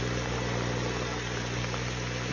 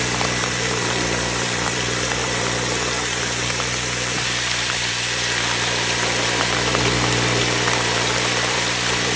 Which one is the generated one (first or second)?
second